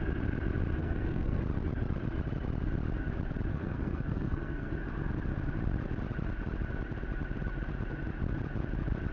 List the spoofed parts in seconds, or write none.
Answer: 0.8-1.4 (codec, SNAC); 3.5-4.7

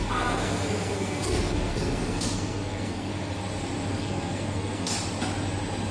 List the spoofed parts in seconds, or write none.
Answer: 0.0-3.1 (codec, SNAC); 3.9-4.9

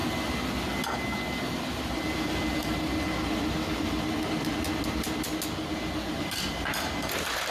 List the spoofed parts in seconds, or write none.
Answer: none

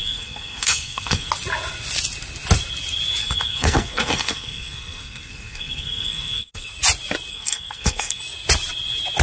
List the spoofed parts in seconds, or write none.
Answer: 0.0-1.3 (codec, SNAC); 3.2-6.7; 7.3-8.2

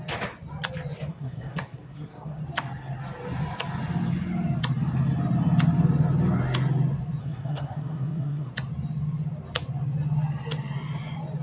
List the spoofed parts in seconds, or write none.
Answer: 1.1-2.4 (codec, SNAC); 7.2-8.5

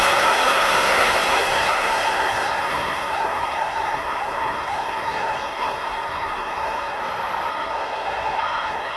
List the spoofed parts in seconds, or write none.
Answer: 0.0-7.0 (codec, SNAC); 7.5-9.0

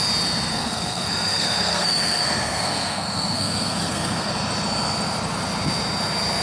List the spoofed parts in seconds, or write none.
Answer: 0.5-4.3 (codec, SNAC)

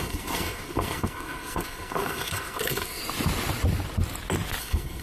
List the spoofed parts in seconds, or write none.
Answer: 0.0-3.0 (codec, SNAC); 4.6-5.0